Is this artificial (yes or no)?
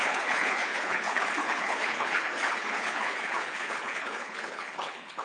yes